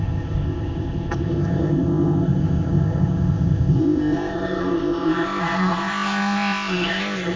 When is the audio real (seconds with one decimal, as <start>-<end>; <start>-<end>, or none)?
none